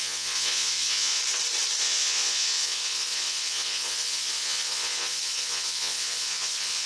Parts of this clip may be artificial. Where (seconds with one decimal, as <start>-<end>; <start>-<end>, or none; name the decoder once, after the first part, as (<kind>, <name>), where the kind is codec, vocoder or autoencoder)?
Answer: 0.0-1.2 (vocoder, Vocos); 1.8-6.9